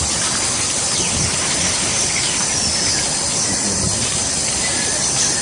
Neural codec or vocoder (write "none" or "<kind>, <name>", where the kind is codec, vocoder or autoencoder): none